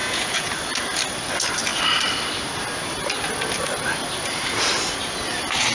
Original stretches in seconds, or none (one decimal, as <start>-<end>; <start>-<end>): 0.5-5.7